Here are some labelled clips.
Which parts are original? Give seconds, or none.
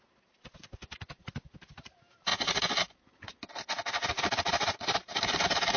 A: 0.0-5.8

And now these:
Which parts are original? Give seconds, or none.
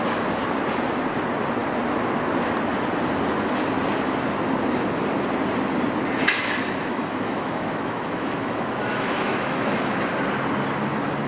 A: 0.0-6.9; 10.0-11.3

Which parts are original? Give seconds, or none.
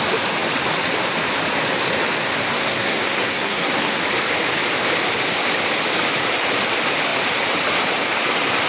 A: 0.0-2.5; 4.0-8.7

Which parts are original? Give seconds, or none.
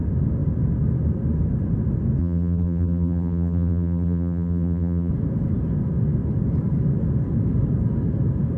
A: 0.0-2.2; 5.1-8.6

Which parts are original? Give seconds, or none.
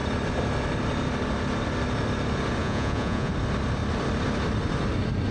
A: 0.0-2.6; 3.3-5.3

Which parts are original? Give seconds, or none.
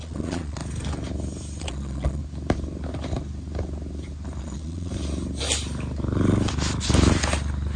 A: 0.6-1.6; 2.2-4.4; 4.9-7.8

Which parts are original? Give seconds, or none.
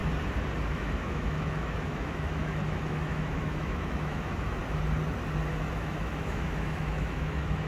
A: 0.0-0.7; 4.6-5.5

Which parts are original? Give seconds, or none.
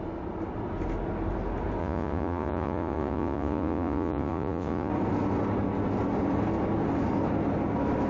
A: 0.0-1.8; 4.9-8.1